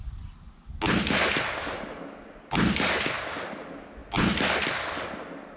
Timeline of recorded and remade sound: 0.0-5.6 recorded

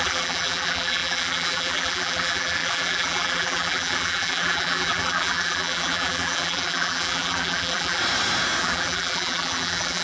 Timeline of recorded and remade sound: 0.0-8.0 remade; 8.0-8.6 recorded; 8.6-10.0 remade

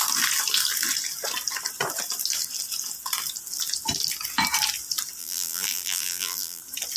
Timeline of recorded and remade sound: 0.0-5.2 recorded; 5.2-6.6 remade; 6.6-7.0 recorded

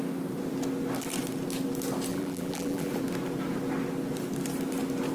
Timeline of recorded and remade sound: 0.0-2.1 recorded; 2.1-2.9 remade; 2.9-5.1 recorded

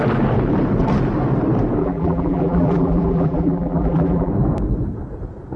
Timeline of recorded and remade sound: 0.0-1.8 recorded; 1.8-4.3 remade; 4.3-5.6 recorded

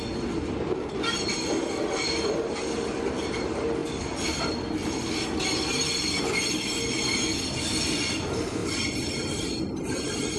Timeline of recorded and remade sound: 0.0-10.4 recorded